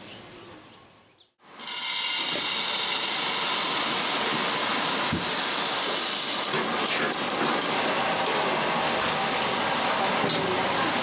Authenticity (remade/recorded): recorded